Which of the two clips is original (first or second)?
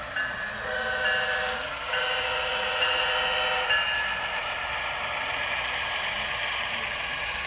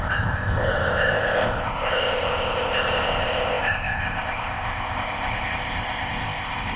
first